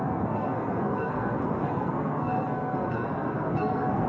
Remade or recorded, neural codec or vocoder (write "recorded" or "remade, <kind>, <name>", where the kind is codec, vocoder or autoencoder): remade, codec, SNAC